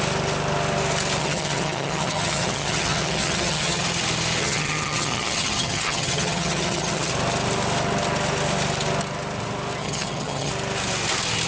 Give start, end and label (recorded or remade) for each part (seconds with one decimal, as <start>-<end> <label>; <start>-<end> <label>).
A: 0.0-1.2 recorded; 1.2-3.8 remade; 3.8-4.4 recorded; 4.4-7.1 remade; 7.1-9.8 recorded; 9.8-10.5 remade; 10.5-11.5 recorded